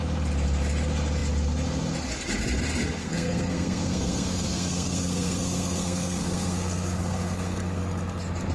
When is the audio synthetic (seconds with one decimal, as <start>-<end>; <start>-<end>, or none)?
3.0-7.8